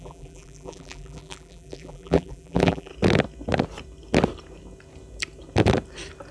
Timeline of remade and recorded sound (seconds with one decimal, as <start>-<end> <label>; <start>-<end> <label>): 0.0-2.9 remade; 2.9-6.3 recorded